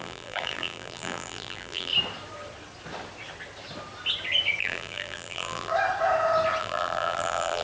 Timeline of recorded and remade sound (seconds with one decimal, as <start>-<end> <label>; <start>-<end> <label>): 0.0-1.9 remade; 1.9-4.6 recorded; 4.6-5.7 remade; 5.7-6.6 recorded; 6.6-7.6 remade